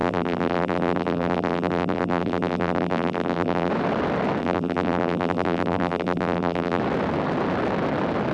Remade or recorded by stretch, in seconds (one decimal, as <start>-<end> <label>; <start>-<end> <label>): 0.0-3.7 remade; 3.7-4.4 recorded; 4.4-6.8 remade; 6.8-8.3 recorded